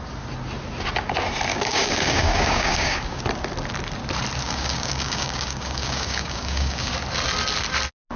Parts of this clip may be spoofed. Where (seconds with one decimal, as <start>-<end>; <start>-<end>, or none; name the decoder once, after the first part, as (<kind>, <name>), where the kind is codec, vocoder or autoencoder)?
1.5-3.2 (codec, DAC); 4.4-6.9